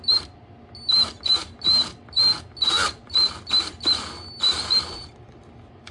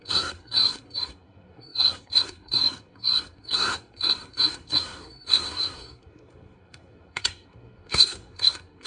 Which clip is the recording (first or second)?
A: first